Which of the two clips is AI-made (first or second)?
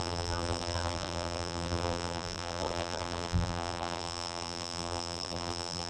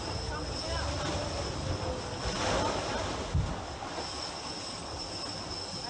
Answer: first